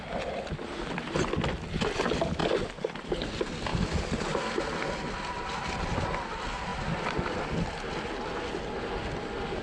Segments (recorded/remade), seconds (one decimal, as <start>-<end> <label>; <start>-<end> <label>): 0.0-2.4 recorded; 2.4-3.1 remade; 3.1-9.6 recorded